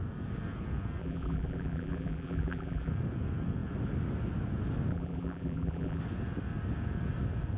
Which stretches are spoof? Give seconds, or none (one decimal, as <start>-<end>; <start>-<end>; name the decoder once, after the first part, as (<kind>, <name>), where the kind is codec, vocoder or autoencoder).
1.0-2.9 (vocoder, BigVGAN v2); 4.9-6.0